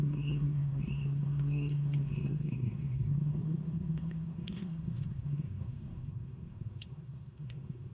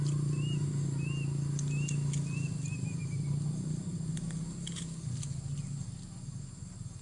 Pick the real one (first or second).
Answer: second